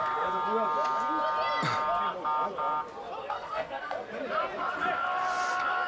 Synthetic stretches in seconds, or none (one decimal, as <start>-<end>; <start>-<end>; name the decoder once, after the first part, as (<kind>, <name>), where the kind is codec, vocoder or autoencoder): 3.2-4.1 (codec, SNAC)